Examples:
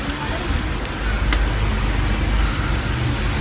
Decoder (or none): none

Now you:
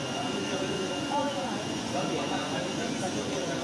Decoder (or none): vocoder, Vocos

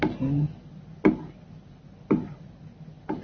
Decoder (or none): none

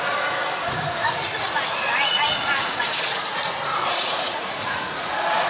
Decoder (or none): vocoder, Vocos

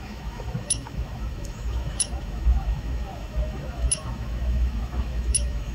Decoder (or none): autoencoder, DAC-VAE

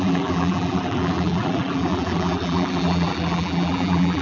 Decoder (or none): vocoder, BigVGAN v2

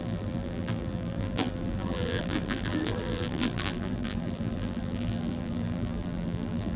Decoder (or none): vocoder, BigVGAN v2